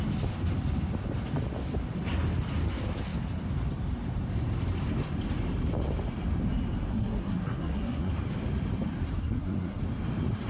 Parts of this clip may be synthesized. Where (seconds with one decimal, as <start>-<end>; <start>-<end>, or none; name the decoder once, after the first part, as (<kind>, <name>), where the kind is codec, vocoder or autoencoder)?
6.9-8.1 (codec, SNAC); 9.2-9.8